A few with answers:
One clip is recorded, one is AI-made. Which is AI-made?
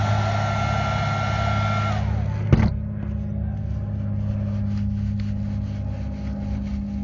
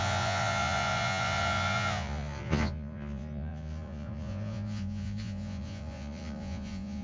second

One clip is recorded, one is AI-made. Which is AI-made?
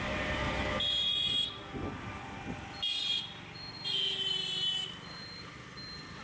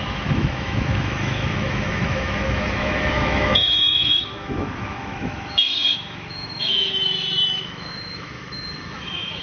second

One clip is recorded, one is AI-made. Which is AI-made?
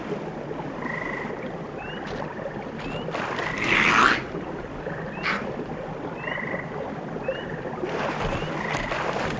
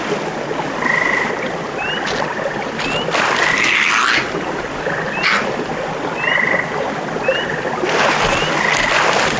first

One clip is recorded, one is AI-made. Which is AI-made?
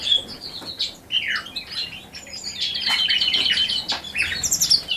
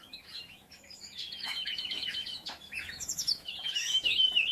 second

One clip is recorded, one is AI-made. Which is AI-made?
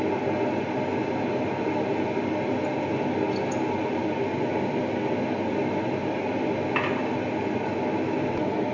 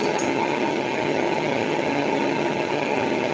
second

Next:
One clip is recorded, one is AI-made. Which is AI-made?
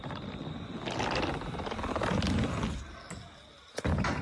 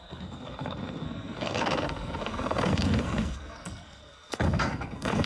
second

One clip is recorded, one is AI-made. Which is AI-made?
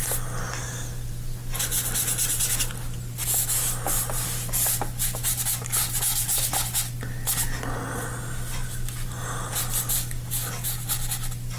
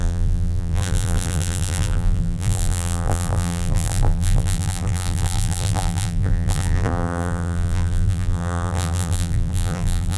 second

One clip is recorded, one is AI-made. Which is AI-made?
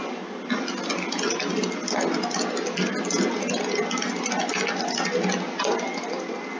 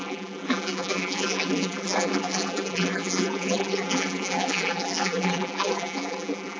second